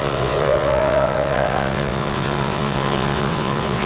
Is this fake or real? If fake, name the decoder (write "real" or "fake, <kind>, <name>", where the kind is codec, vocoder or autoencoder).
fake, vocoder, WaveNeXt